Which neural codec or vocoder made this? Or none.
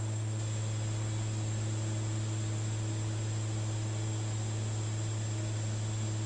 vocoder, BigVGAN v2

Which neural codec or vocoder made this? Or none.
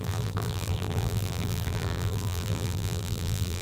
vocoder, BigVGAN v2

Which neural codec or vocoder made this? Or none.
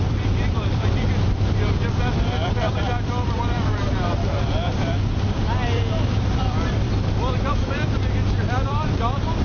vocoder, BigVGAN v2